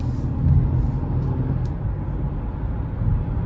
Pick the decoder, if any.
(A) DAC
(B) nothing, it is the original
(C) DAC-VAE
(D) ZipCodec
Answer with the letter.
B